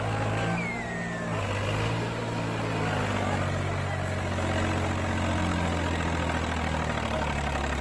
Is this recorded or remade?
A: recorded